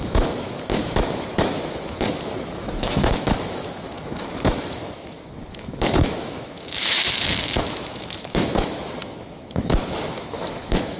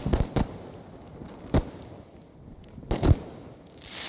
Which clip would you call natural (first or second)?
second